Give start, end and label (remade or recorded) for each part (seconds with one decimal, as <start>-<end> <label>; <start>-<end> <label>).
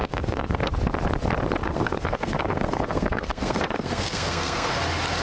0.0-0.7 remade; 0.7-1.6 recorded; 1.6-4.7 remade; 4.7-5.2 recorded